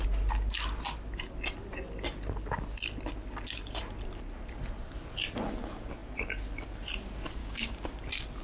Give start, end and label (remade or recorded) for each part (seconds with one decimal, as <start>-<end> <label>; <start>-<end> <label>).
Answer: 0.0-7.4 recorded; 7.4-7.9 remade; 7.9-8.4 recorded